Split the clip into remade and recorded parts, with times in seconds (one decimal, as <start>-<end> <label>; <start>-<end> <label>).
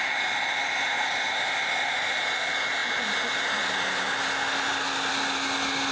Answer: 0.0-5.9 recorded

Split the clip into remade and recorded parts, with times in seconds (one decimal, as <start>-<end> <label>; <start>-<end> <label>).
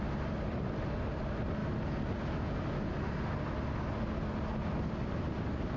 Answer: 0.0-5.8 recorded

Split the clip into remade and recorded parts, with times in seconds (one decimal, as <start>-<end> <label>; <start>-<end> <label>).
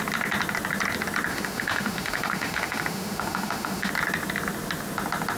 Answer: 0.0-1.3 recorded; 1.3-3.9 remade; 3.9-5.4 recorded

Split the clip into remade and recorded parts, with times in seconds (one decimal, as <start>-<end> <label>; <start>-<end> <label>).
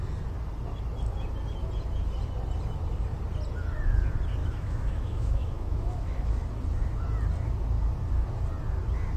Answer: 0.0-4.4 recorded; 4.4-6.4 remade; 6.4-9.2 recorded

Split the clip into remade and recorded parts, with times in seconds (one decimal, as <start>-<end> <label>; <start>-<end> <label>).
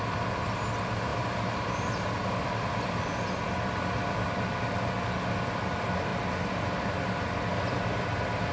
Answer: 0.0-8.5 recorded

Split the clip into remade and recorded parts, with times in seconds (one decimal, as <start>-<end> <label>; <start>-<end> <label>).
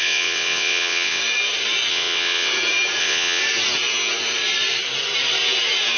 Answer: 0.0-1.2 remade; 1.2-1.9 recorded; 1.9-2.5 remade; 2.5-3.0 recorded; 3.0-3.4 remade; 3.4-6.0 recorded